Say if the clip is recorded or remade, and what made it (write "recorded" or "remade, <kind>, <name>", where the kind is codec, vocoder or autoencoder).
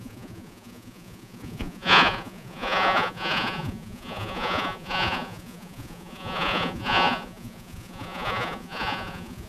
remade, vocoder, Vocos